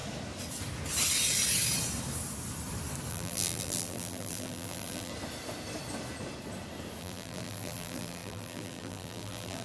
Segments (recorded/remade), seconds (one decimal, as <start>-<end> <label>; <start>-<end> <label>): 0.0-3.1 recorded; 3.1-5.1 remade; 5.1-7.0 recorded; 7.0-9.6 remade